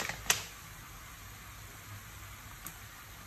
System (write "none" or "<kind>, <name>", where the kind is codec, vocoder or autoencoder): none